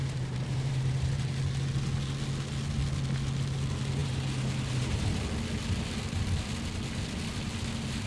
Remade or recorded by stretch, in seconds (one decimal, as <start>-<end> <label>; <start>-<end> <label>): 0.0-1.3 remade; 1.3-4.0 recorded; 4.0-5.1 remade; 5.1-8.1 recorded

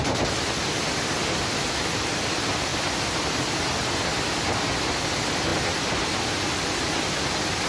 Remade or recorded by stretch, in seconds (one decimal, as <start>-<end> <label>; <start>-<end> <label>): 0.0-7.7 recorded

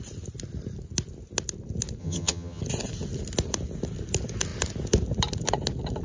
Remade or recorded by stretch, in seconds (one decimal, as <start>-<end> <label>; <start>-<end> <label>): 0.0-2.0 recorded; 2.0-2.6 remade; 2.6-6.0 recorded